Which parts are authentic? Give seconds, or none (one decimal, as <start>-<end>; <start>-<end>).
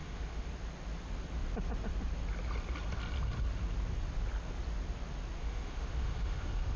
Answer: 0.5-5.4